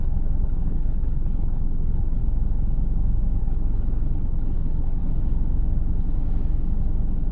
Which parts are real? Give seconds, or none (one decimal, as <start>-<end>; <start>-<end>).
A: 2.2-3.4; 5.0-7.3